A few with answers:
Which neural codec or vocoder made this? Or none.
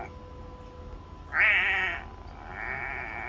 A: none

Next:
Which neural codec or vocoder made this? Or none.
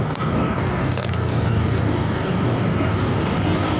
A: codec, DAC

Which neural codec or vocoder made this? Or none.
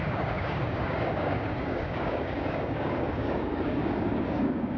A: codec, DAC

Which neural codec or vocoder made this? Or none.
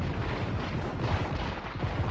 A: none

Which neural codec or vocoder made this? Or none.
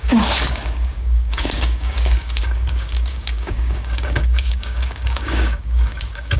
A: codec, DAC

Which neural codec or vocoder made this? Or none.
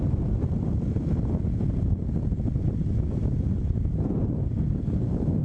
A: none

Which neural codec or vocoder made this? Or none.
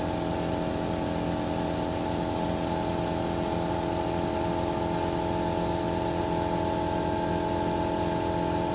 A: none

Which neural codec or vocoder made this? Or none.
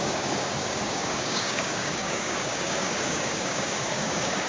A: codec, DAC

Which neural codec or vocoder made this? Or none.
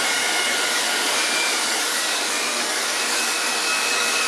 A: codec, DAC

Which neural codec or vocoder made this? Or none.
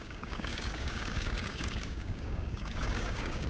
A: codec, DAC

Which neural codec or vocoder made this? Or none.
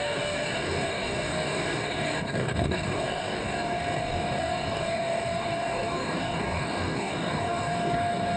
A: codec, DAC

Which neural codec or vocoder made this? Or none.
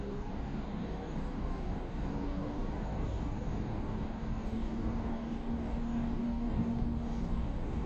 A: codec, DAC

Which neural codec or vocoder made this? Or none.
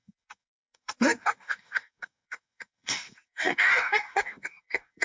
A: codec, DAC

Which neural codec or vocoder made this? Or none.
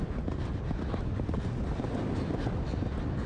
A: none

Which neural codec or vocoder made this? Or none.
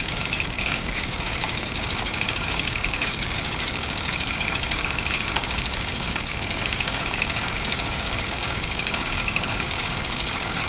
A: codec, DAC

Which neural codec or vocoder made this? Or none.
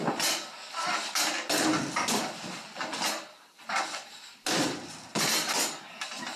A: none